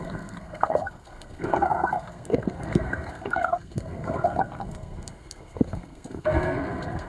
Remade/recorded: remade